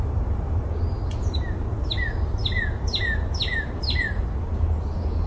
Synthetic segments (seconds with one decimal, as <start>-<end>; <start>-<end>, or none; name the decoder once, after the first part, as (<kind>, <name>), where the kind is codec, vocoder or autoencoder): none